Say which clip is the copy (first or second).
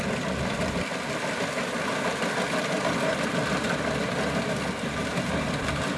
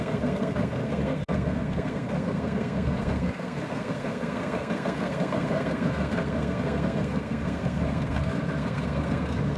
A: second